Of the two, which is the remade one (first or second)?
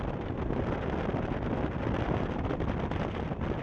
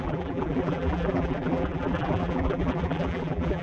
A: second